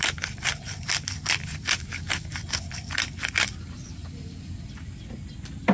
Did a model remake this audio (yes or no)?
no